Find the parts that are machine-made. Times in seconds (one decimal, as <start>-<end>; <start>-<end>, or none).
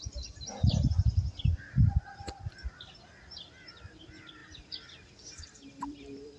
none